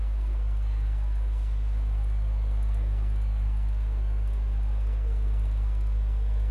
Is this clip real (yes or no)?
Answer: no